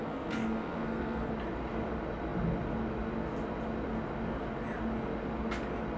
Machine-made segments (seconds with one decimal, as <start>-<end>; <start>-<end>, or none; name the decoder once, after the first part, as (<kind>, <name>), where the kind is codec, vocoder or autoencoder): 0.0-1.3 (codec, SNAC)